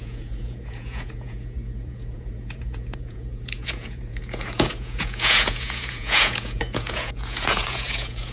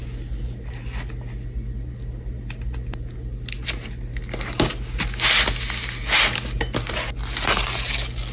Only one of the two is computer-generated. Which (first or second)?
first